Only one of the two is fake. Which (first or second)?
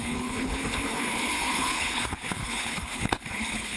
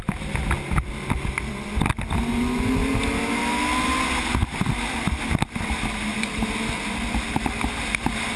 first